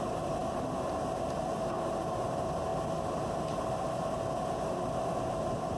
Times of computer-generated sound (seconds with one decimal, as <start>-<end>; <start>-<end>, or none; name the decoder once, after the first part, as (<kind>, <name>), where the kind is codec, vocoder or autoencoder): 0.4-1.4 (vocoder, BigVGAN v2); 2.7-4.7